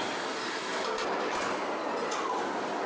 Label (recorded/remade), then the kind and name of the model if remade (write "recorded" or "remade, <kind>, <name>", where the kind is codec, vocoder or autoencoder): recorded